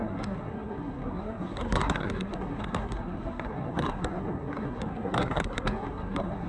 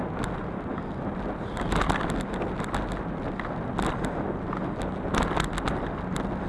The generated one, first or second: first